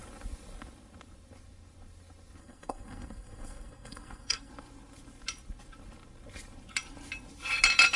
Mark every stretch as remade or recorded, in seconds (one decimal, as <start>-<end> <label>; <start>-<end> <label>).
0.0-2.4 recorded; 2.4-4.5 remade; 4.5-8.0 recorded